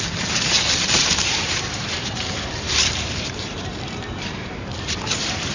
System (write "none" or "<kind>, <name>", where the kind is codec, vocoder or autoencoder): vocoder, BigVGAN v2